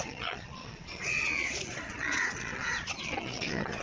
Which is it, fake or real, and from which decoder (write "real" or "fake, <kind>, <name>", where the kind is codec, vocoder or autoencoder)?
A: fake, vocoder, Vocos